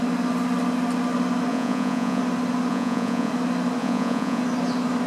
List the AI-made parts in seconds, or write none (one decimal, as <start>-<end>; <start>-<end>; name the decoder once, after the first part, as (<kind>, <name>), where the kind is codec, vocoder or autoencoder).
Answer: 1.5-2.2 (vocoder, Vocos); 2.7-3.3; 3.8-4.4